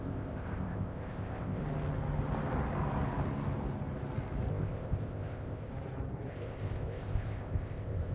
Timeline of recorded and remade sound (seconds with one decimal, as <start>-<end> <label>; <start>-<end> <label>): 0.0-1.6 remade; 1.6-4.5 recorded; 4.5-5.7 remade; 5.7-6.3 recorded; 6.3-8.1 remade